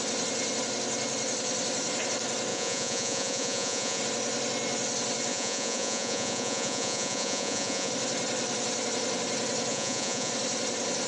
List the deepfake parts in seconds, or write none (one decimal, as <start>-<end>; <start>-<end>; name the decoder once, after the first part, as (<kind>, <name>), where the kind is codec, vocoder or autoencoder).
2.5-4.0 (vocoder, Vocos); 5.3-7.9; 9.7-10.3